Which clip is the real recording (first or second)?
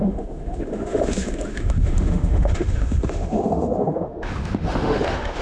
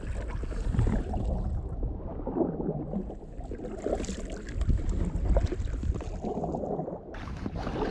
second